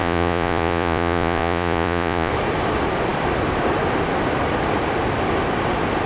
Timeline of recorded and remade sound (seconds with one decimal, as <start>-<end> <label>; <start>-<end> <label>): 0.0-2.3 remade; 2.3-6.1 recorded